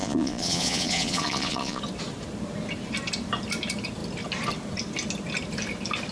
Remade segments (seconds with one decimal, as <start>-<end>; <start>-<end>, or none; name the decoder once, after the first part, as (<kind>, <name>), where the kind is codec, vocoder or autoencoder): 0.0-1.8 (vocoder, Vocos)